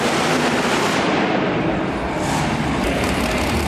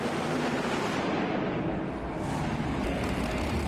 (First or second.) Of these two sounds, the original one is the second